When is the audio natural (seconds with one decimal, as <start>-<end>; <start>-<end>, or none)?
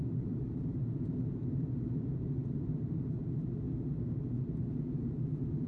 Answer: 3.2-4.5